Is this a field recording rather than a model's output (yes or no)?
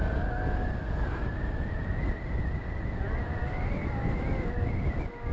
yes